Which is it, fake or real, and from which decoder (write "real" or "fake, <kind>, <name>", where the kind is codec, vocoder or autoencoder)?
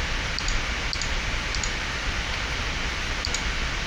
real